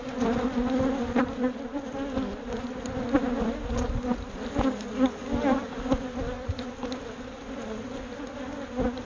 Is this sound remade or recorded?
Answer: recorded